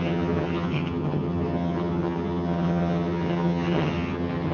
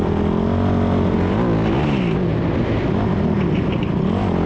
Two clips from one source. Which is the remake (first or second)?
first